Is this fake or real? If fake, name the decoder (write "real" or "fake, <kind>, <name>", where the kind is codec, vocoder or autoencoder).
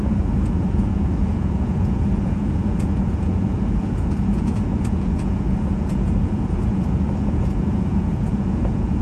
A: fake, vocoder, Vocos